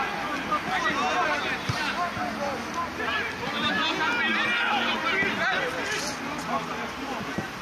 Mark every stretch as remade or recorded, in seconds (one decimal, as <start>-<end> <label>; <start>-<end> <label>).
0.0-7.6 recorded